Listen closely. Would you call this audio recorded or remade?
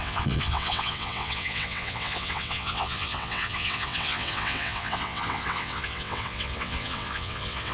remade